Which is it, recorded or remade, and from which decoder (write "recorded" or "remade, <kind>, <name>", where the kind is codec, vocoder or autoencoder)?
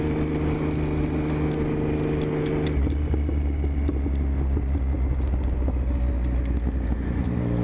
recorded